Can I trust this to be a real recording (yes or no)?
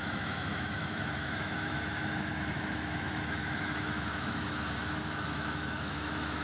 no